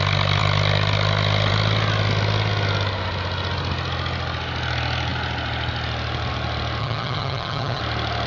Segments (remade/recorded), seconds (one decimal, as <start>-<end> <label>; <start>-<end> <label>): 0.0-6.8 recorded; 6.8-7.8 remade; 7.8-8.3 recorded